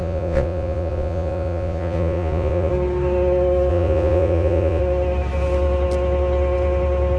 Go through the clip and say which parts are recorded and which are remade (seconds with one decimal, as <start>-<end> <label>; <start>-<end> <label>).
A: 0.0-2.7 remade; 2.7-3.7 recorded; 3.7-4.8 remade; 4.8-7.2 recorded